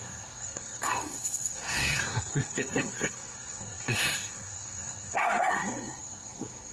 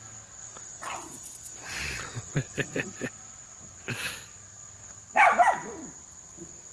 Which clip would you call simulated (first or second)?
first